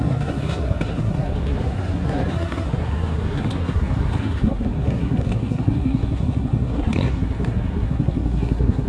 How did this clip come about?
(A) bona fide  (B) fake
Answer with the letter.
B